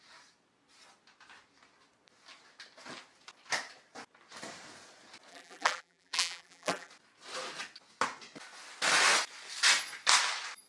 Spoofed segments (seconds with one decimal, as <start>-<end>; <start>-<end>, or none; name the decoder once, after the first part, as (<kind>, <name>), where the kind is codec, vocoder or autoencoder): 5.3-6.9 (vocoder, BigVGAN v2)